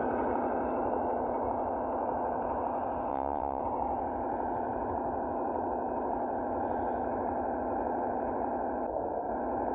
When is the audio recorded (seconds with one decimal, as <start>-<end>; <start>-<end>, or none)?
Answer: 0.0-3.1; 3.6-9.7